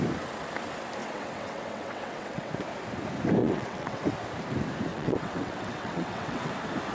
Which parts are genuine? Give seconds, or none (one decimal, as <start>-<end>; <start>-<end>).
0.0-1.0; 2.5-3.4; 4.0-4.9; 6.5-6.9